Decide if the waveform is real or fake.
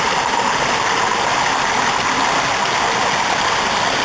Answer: real